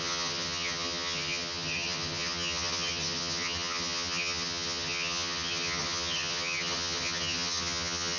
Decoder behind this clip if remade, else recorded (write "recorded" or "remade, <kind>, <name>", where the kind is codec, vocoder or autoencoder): remade, vocoder, HiFi-GAN